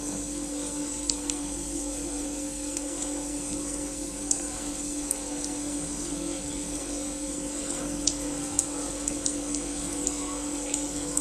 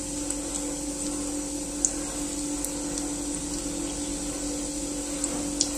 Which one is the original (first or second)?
second